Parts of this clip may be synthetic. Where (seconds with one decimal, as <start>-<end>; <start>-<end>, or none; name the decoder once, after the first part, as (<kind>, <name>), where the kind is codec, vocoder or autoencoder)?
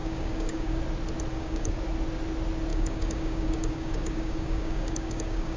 0.0-0.8 (codec, DAC); 1.3-1.8; 2.7-5.6